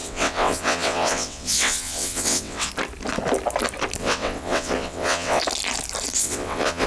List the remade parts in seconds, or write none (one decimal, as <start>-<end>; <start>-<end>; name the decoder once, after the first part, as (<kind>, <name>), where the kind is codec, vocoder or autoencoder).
0.0-2.7 (vocoder, WaveNeXt); 4.0-5.4; 6.2-6.9